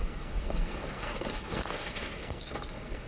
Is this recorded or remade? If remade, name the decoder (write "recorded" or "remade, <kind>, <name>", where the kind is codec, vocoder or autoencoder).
remade, codec, SNAC